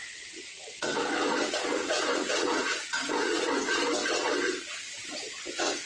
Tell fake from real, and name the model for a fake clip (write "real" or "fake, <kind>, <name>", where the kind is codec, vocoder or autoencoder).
fake, vocoder, WaveNeXt